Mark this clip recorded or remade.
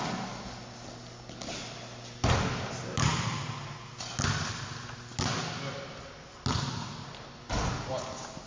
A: recorded